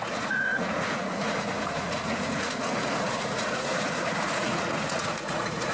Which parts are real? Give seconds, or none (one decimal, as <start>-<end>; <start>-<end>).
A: none